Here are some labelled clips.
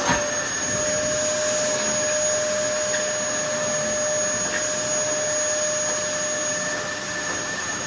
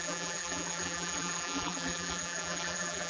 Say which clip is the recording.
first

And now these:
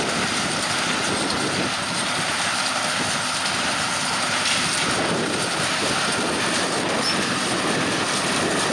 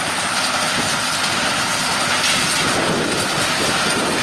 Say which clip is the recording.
second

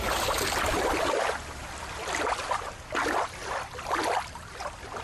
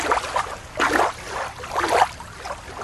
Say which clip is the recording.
second